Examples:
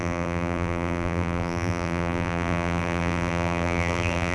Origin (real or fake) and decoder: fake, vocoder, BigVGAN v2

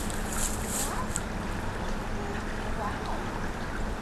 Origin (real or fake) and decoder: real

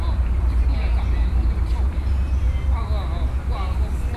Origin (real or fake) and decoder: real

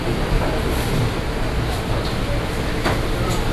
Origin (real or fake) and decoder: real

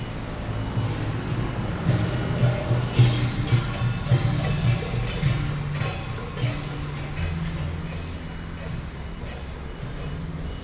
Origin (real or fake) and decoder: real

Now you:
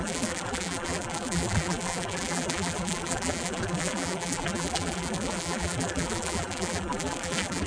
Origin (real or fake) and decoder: fake, vocoder, BigVGAN v2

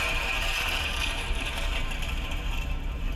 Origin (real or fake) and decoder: fake, vocoder, BigVGAN v2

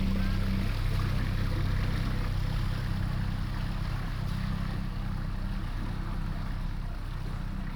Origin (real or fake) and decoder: real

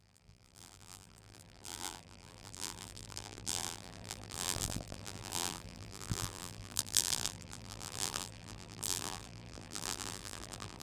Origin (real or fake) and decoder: fake, vocoder, BigVGAN v2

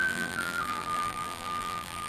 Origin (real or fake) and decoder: fake, vocoder, BigVGAN v2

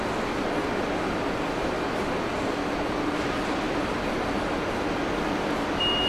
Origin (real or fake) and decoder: real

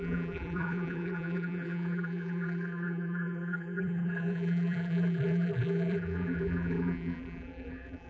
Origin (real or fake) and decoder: fake, vocoder, BigVGAN v2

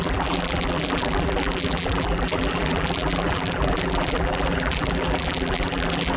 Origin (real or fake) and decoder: fake, vocoder, BigVGAN v2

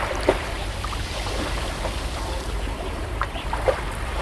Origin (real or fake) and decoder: fake, vocoder, BigVGAN v2